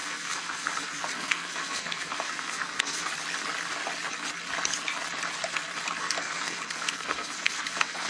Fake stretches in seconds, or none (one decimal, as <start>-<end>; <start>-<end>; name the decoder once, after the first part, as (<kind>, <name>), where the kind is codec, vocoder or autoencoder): 0.0-3.1 (codec, SNAC); 6.0-8.1